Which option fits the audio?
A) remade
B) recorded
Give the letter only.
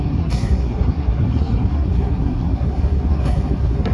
A